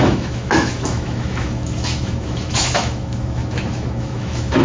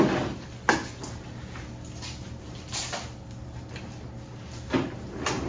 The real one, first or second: second